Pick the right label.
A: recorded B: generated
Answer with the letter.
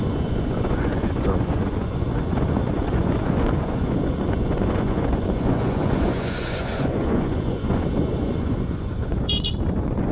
B